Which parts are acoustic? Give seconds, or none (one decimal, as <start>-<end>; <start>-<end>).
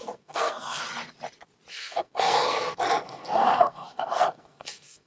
0.8-1.7